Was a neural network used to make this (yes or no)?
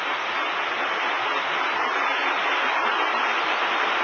no